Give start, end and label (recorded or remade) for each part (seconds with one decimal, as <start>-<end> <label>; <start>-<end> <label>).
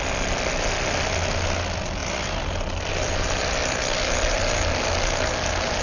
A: 0.0-5.8 recorded